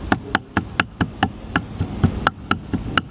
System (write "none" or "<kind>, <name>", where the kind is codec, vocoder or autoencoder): none